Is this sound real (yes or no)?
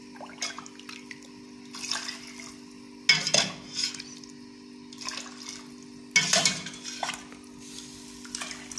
yes